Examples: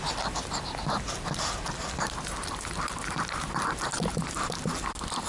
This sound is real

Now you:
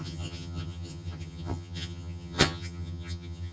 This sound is fake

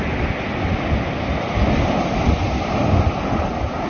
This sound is real